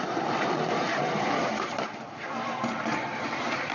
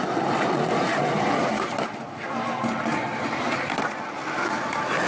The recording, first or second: second